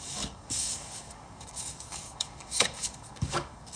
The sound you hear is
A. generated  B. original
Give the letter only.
A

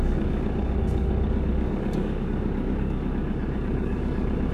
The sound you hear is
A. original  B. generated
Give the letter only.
B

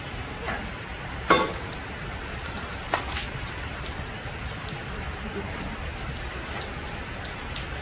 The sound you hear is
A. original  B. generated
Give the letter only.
A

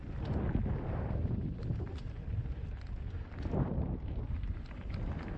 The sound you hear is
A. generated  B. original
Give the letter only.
B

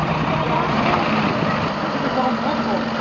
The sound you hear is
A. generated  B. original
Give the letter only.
B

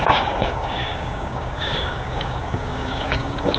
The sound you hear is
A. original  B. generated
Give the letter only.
B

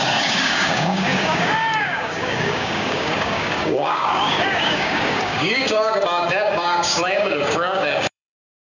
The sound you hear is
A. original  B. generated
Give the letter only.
B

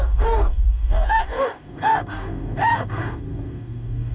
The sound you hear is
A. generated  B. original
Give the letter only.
A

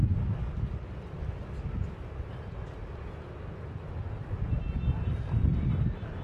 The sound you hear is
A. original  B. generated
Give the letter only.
A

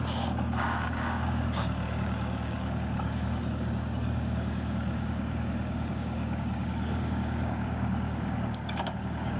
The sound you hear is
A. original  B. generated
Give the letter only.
B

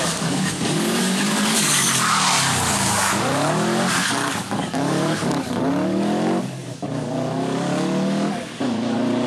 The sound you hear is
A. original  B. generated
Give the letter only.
B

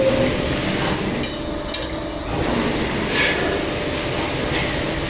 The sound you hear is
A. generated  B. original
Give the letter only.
B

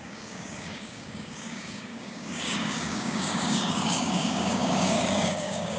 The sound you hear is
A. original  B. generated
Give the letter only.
B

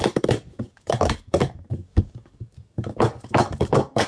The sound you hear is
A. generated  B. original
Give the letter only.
A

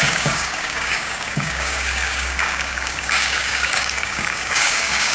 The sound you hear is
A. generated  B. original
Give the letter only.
A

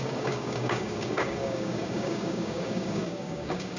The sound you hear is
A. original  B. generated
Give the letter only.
B